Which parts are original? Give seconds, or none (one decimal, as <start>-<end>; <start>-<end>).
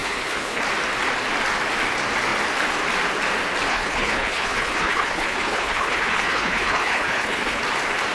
0.6-3.7; 7.6-8.1